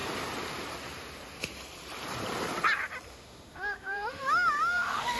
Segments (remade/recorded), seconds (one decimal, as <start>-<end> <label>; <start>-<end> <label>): 0.0-3.1 recorded; 3.1-5.2 remade